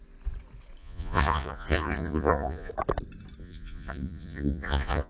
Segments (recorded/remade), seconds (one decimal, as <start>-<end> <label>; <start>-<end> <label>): 0.0-0.8 recorded; 0.8-2.7 remade; 2.7-3.4 recorded; 3.4-5.1 remade